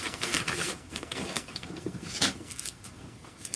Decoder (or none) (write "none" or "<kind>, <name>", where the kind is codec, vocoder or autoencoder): codec, SNAC